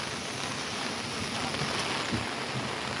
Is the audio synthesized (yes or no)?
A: no